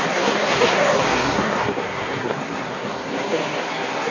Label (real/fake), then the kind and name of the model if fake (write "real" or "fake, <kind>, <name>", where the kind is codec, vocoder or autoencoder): fake, codec, SNAC